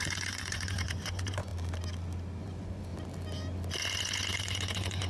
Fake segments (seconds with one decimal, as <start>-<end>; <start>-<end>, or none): 0.0-1.5; 2.4-2.9; 3.8-5.1